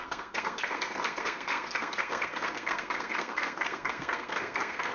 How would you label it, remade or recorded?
remade